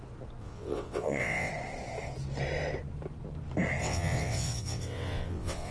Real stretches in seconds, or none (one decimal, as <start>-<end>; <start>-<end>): 0.0-0.4; 1.5-3.8